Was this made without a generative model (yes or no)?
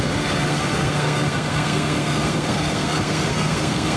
no